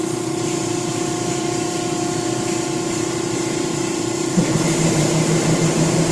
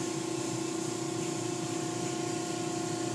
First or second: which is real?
second